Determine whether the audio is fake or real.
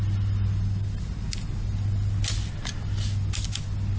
real